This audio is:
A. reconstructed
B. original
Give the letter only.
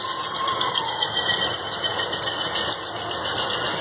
B